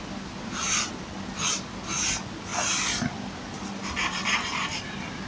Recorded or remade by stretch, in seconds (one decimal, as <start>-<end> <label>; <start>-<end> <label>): 0.0-5.3 recorded